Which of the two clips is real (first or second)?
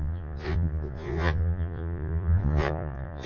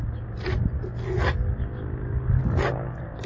second